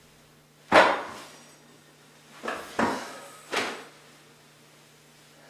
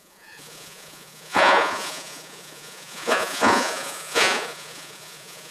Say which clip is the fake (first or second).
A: second